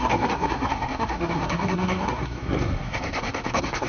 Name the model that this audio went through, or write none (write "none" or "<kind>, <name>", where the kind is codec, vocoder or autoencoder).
codec, SNAC